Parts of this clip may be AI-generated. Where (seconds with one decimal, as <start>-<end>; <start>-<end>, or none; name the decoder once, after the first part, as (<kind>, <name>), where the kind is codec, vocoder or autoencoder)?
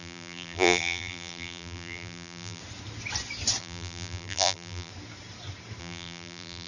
0.0-2.6 (vocoder, BigVGAN v2); 3.6-4.9; 5.8-6.7